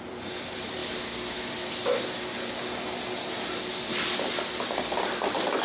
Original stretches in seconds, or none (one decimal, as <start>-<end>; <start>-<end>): none